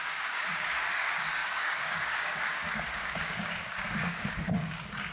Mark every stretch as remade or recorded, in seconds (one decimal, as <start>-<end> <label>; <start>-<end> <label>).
0.0-5.1 remade